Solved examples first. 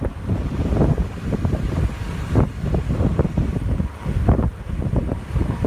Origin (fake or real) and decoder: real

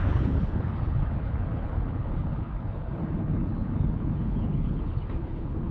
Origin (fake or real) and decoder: fake, codec, HILCodec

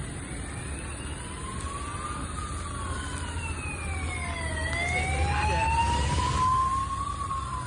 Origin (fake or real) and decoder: real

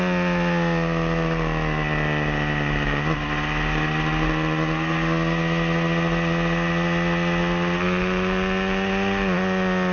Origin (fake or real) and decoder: real